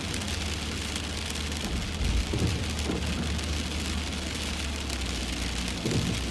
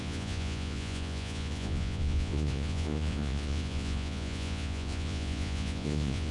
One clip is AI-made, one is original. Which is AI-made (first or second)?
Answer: second